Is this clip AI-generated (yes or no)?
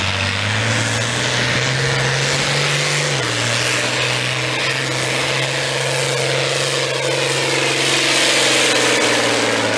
no